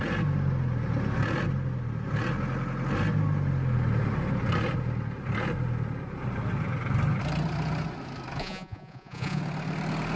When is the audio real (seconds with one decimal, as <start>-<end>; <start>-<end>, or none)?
0.0-8.4; 9.4-10.2